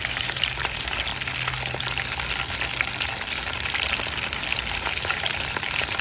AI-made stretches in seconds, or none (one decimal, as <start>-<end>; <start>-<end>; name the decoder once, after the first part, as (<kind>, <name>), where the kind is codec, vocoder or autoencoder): 0.0-1.1 (vocoder, BigVGAN v2); 4.7-6.0